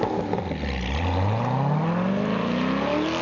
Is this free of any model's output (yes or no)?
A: yes